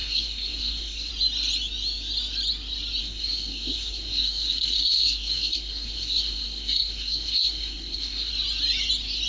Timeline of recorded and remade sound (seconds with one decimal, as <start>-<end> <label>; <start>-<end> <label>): 0.0-1.1 remade; 1.1-3.0 recorded; 3.0-8.3 remade; 8.3-9.3 recorded